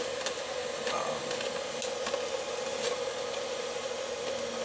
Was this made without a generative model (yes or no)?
yes